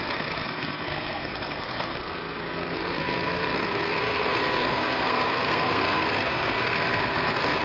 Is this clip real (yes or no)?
no